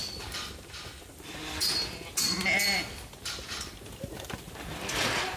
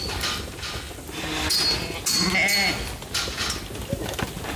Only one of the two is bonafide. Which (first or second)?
second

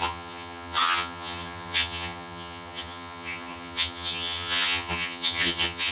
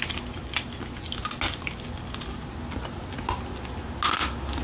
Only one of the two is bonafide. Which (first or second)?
second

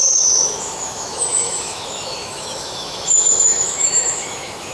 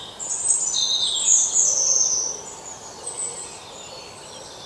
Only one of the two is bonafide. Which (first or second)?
second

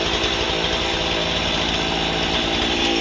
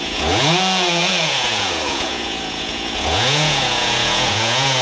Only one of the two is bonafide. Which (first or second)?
first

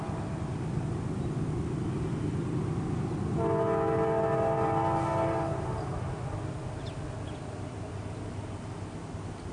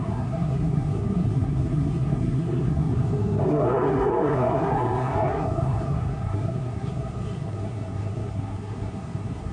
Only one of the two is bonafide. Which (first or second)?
first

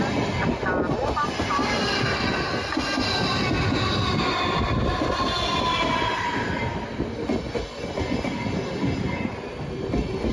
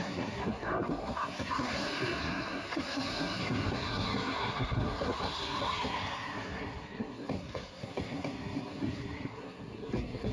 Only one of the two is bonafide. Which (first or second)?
first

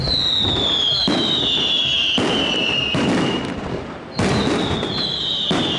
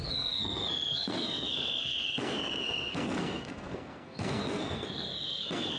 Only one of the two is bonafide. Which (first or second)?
first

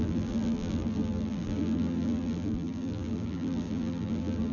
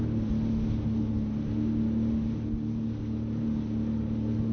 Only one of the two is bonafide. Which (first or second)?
second